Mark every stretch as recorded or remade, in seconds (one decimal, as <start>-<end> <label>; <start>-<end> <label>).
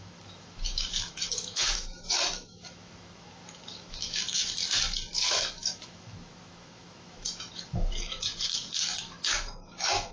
0.0-4.6 remade; 4.6-5.1 recorded; 5.1-10.1 remade